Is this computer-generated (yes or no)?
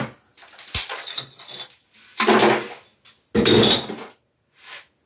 no